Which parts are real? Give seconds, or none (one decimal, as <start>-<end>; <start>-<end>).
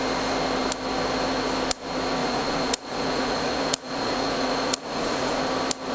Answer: 0.0-2.2; 5.4-5.9